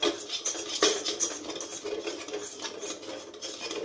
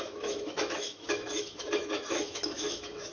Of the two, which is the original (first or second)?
first